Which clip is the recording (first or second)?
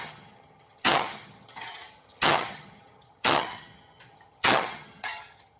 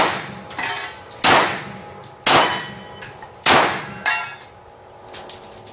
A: second